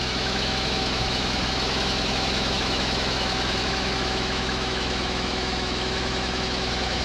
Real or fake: fake